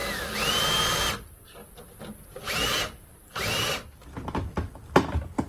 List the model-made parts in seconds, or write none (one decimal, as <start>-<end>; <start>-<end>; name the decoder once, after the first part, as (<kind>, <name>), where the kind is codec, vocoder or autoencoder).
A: 0.5-1.6 (vocoder, BigVGAN v2); 2.5-5.5